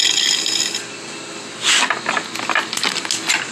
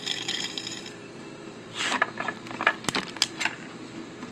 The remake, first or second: second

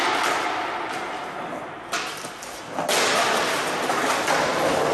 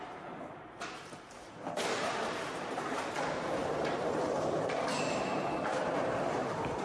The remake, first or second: second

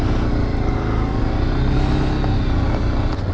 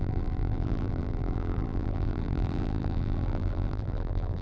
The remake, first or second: second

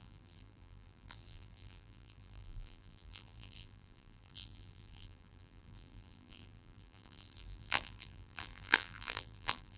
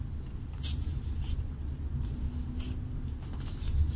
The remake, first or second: first